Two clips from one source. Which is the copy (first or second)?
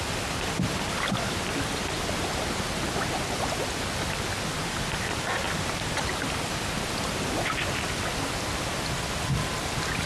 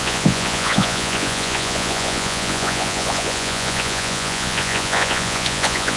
second